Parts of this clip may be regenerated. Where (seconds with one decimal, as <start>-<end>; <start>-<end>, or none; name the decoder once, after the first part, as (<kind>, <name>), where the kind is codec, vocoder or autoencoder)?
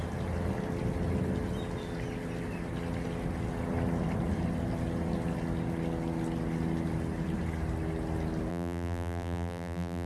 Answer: 8.5-10.1 (vocoder, BigVGAN v2)